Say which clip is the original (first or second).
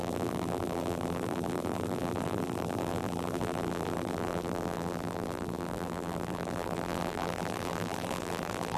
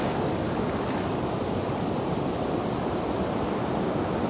second